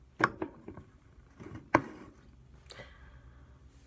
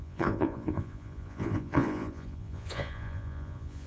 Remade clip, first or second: second